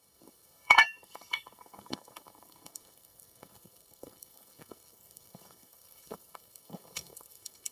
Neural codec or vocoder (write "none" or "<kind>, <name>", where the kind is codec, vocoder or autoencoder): codec, SNAC